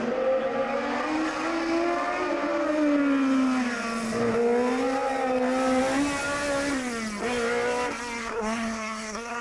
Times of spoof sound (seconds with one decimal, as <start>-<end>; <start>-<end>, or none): 8.2-9.4